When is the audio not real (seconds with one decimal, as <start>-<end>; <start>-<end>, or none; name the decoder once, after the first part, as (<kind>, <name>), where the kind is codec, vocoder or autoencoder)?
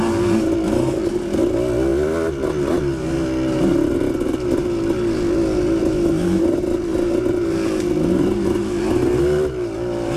none